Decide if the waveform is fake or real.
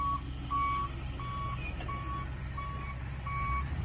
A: real